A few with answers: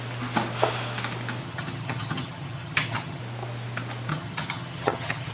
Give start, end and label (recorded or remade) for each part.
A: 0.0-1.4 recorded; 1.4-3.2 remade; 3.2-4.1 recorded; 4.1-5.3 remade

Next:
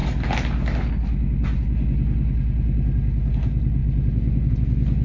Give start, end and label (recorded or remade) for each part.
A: 0.0-5.0 recorded

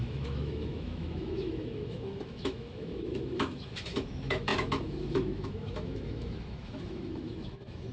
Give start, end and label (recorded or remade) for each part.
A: 0.0-7.9 remade

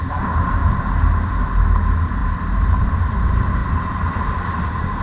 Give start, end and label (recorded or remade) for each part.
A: 0.0-2.2 recorded; 2.2-3.1 remade; 3.1-5.0 recorded

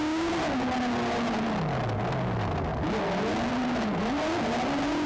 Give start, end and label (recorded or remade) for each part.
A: 0.0-5.1 recorded

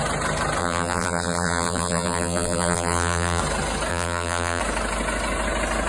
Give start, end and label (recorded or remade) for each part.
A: 0.0-0.6 recorded; 0.6-3.4 remade; 3.4-3.9 recorded; 3.9-4.6 remade; 4.6-5.9 recorded